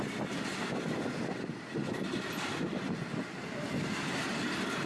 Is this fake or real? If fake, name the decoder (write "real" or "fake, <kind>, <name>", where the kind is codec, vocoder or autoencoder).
real